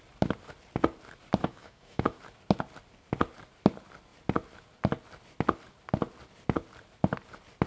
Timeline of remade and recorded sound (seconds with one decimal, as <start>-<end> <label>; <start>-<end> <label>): 0.0-1.4 recorded; 1.4-2.2 remade; 2.2-7.7 recorded